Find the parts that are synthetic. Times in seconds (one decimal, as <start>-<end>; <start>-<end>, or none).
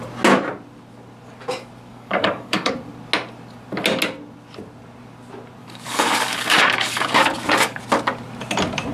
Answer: 1.9-2.7; 5.6-7.8